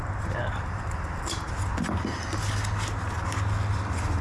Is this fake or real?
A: real